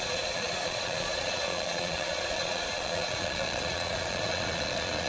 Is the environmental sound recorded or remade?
remade